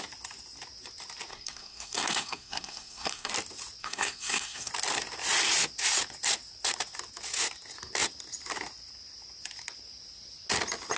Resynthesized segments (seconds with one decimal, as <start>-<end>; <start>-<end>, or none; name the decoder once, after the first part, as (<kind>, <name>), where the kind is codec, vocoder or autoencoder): 1.3-3.3 (codec, SNAC); 3.8-4.7